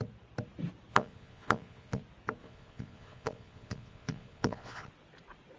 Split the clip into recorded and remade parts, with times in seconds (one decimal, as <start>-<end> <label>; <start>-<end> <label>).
0.0-0.9 recorded; 0.9-2.0 remade; 2.0-2.4 recorded; 2.4-4.9 remade; 4.9-5.6 recorded